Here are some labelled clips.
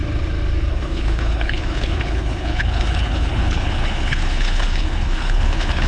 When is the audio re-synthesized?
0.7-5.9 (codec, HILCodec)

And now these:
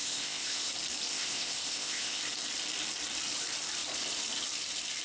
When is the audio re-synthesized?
0.0-0.7 (codec, ZipCodec); 1.1-2.2

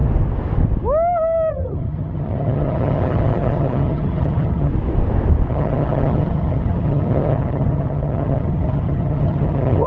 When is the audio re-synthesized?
1.5-4.7 (vocoder, HiFi-GAN); 5.5-9.9